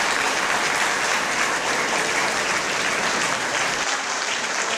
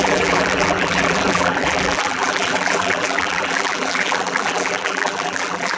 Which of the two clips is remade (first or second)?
second